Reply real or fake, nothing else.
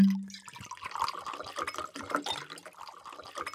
real